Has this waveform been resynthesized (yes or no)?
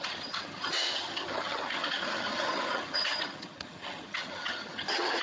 yes